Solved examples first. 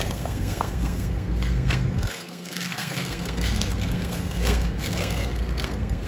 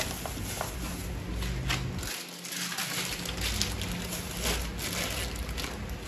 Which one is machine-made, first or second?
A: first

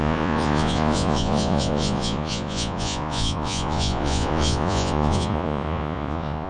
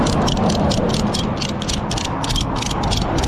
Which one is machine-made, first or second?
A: first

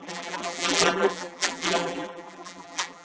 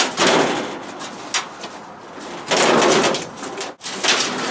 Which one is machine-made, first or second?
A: first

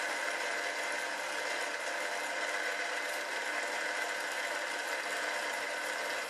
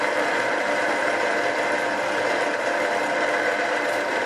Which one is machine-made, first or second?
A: second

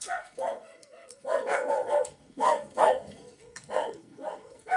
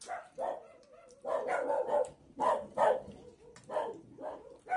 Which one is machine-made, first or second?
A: first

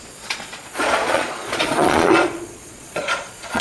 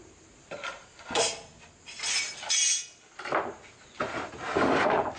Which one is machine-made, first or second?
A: first